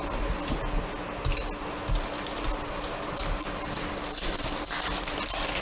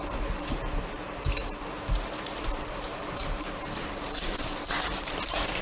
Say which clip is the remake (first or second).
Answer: second